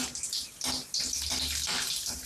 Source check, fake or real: real